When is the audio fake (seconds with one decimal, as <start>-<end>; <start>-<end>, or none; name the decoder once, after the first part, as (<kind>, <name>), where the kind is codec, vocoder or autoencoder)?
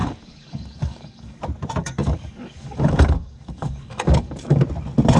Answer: 0.0-1.4 (codec, DAC); 1.8-4.6